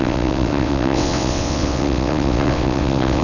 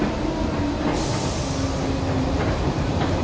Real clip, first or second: second